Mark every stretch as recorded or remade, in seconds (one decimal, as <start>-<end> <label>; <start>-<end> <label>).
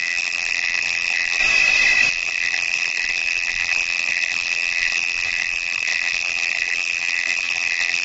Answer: 0.0-1.4 remade; 1.4-2.1 recorded; 2.1-8.0 remade